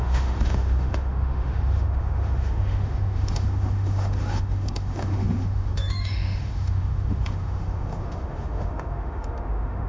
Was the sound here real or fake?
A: fake